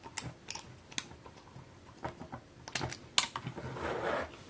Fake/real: real